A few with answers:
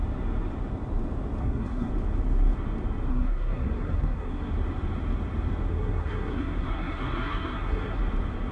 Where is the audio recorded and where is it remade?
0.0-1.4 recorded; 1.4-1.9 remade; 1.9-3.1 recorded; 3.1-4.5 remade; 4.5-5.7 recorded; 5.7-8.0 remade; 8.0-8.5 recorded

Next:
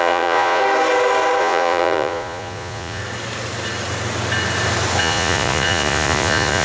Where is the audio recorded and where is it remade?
0.0-0.6 remade; 0.6-1.4 recorded; 1.4-3.0 remade; 3.0-5.0 recorded; 5.0-6.6 remade